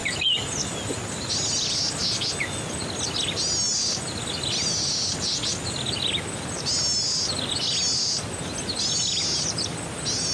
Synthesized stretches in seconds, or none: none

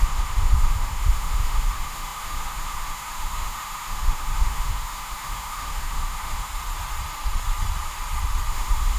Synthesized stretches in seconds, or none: 0.0-6.5 (autoencoder, DAC-VAE); 8.5-9.0

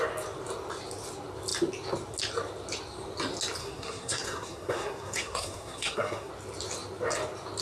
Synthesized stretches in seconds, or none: 3.6-6.3 (codec, SNAC)

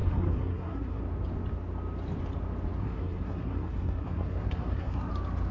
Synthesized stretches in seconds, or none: 0.0-1.0 (codec, SNAC); 2.8-5.1